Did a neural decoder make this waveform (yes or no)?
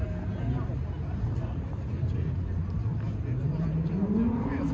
no